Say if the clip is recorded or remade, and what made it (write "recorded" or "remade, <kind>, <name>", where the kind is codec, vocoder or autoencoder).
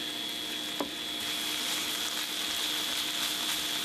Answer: recorded